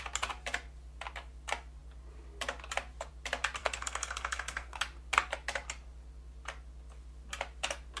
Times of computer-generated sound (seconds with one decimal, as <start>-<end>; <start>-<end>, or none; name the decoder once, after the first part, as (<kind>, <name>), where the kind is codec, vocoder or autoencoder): 3.6-4.8 (codec, SNAC)

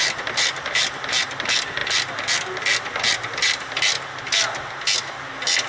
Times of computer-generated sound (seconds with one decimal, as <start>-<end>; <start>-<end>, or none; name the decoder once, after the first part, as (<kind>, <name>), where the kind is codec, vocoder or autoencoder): none

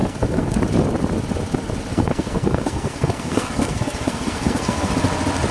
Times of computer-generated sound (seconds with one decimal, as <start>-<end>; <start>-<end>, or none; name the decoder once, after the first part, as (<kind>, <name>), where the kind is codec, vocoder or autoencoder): 0.0-0.6 (codec, SNAC); 1.9-4.9

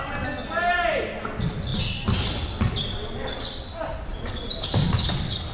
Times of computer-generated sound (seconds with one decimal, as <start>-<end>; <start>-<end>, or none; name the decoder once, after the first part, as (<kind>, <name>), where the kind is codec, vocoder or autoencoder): none

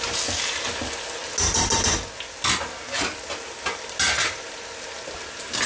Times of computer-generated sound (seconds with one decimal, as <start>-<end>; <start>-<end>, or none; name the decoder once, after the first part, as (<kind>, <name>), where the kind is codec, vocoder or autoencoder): none

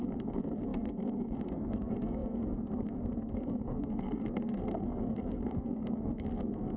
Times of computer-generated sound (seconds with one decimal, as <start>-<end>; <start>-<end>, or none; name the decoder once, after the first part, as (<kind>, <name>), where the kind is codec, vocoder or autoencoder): 0.0-6.8 (codec, SNAC)

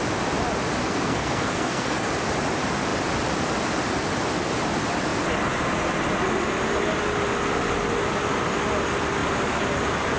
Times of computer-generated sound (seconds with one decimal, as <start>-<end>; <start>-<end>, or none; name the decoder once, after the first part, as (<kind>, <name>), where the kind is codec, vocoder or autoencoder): 0.8-2.1 (codec, SNAC)

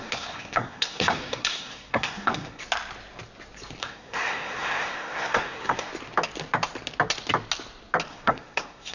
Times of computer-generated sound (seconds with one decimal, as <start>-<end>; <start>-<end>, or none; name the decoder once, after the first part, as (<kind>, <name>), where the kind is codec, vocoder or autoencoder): 0.0-2.6 (codec, SNAC); 3.8-5.9; 8.1-8.9